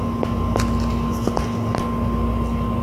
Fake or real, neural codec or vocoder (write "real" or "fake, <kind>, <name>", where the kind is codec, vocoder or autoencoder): real